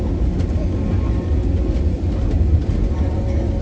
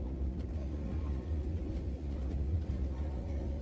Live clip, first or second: first